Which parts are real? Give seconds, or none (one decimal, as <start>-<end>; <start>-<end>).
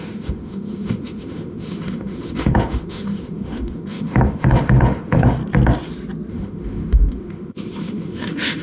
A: 5.4-6.3